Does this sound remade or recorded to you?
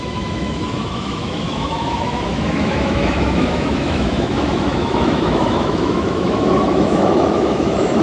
remade